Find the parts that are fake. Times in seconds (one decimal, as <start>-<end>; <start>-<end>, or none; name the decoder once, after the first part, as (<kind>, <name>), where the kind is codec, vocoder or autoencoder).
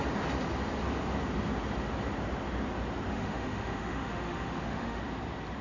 3.1-5.0 (autoencoder, DAC-VAE)